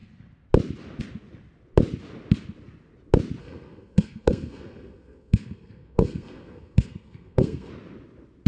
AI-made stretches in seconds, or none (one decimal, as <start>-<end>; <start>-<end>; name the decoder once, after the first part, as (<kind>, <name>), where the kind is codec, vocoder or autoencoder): 3.4-7.7 (codec, SNAC)